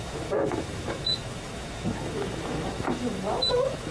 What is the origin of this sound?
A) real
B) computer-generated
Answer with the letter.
B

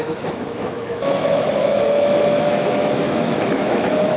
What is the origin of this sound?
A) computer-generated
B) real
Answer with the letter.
A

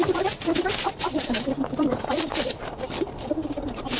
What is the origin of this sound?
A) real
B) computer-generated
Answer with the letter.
A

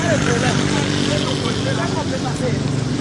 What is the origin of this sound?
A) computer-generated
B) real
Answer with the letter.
B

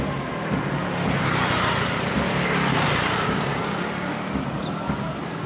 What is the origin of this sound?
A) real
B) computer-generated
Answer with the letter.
A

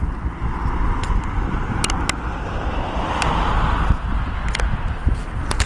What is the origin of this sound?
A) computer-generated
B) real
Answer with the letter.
B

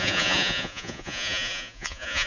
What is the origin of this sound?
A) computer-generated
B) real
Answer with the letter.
A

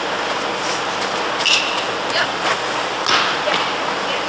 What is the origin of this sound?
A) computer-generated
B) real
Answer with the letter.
B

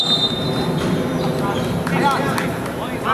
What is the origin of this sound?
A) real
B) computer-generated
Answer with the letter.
A